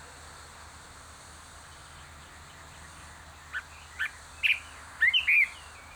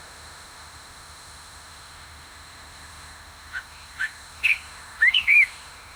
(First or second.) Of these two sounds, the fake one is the second